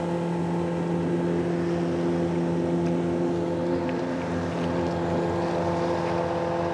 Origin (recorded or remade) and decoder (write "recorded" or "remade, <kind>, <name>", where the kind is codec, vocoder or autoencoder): recorded